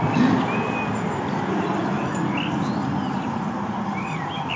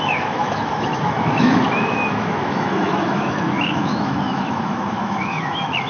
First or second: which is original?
first